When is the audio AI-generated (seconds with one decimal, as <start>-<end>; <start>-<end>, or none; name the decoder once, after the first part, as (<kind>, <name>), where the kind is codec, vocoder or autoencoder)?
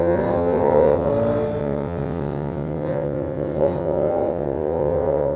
0.0-1.1 (vocoder, WaveNeXt); 1.6-5.4